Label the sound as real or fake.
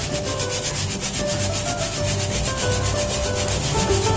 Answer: real